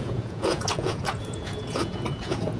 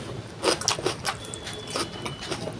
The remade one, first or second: first